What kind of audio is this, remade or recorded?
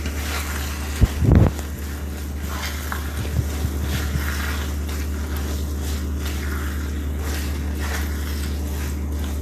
recorded